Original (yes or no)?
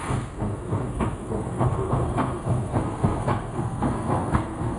no